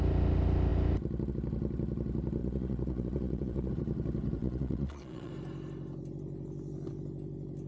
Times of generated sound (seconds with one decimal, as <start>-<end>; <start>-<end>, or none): 2.4-3.7; 4.4-5.3